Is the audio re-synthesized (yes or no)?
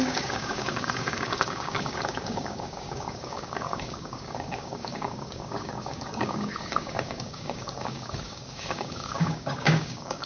yes